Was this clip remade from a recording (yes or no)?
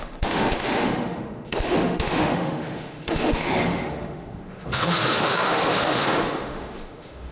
yes